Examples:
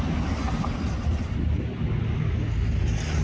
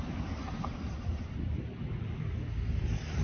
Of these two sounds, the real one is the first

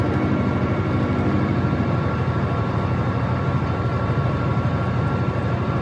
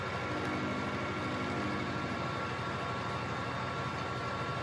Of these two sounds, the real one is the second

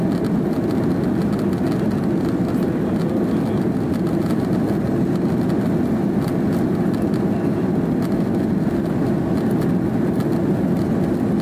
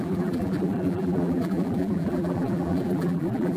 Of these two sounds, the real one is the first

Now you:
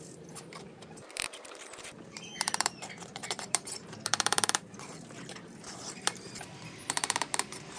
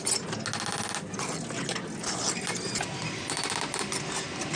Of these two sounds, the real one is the second